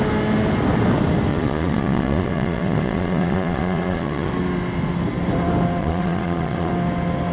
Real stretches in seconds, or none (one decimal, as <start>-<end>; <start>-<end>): 0.0-1.3; 4.3-5.8; 6.7-7.3